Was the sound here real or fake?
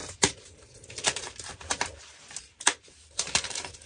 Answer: fake